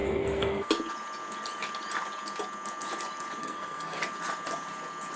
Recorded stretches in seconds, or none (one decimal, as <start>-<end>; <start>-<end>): 0.7-3.4; 4.0-5.2